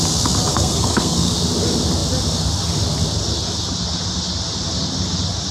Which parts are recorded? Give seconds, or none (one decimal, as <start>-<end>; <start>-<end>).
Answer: 0.0-0.5; 1.3-5.5